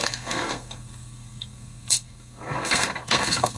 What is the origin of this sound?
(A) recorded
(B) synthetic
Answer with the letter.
B